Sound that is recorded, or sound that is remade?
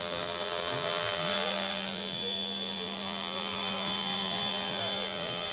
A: remade